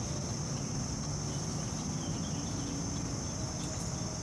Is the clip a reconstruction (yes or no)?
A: no